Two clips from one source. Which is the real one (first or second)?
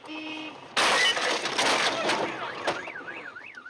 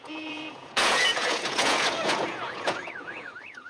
first